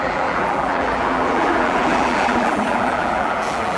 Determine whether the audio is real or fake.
fake